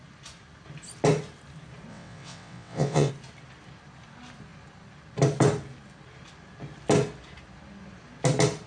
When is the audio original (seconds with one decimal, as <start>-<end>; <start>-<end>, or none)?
0.0-1.9; 3.1-8.7